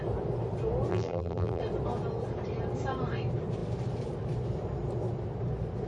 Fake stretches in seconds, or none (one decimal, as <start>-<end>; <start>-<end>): 0.9-1.6